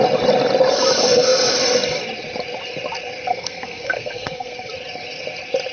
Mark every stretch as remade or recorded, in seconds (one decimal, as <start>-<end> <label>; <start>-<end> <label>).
0.0-3.3 recorded; 3.3-4.7 remade; 4.7-5.7 recorded